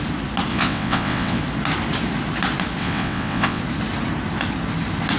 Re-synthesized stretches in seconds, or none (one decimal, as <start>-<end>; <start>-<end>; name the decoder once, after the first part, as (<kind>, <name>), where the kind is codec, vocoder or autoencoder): 0.5-1.4 (vocoder, WaveNeXt); 2.8-3.6